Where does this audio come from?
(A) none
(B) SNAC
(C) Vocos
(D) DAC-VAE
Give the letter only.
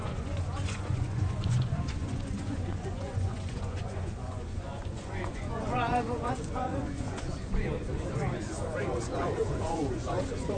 C